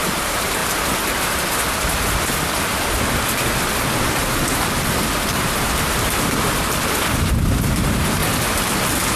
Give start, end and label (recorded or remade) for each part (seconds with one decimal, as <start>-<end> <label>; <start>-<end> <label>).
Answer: 0.0-0.6 remade; 0.6-4.2 recorded; 4.2-8.2 remade; 8.2-9.2 recorded